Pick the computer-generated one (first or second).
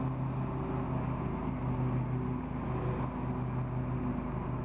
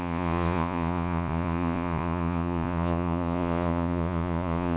second